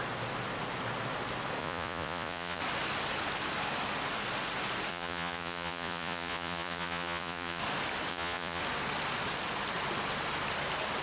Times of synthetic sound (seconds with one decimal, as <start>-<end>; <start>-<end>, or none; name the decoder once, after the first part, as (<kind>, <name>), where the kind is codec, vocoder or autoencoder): 1.6-2.6 (vocoder, Vocos); 4.9-7.6; 8.1-8.6